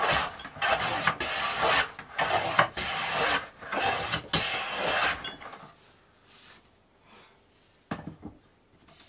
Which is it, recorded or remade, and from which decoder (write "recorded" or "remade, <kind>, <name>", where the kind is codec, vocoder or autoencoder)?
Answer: recorded